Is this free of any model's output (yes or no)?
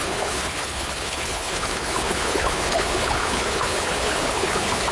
no